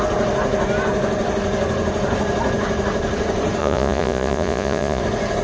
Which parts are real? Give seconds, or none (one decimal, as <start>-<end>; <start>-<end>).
0.0-3.6; 5.0-5.4